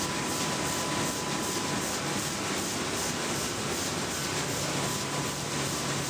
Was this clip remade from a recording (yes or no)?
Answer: no